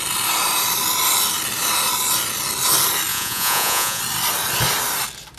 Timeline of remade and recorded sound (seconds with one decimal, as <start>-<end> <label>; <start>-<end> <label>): 0.0-3.1 recorded; 3.1-4.0 remade; 4.0-5.4 recorded